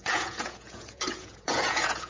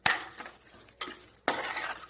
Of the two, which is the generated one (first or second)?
first